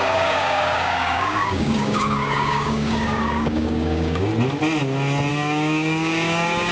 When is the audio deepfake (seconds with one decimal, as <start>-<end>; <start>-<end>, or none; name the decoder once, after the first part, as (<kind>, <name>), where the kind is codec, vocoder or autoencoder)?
0.0-4.3 (codec, DAC); 5.3-6.7